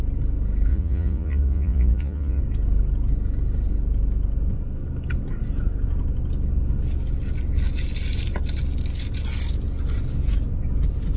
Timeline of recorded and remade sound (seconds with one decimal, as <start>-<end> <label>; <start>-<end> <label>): 0.0-0.7 recorded; 0.7-2.4 remade; 2.4-11.2 recorded